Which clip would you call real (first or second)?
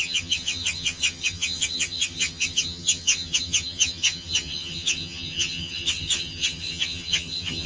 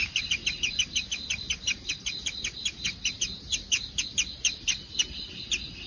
second